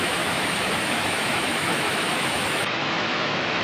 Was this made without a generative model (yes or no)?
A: no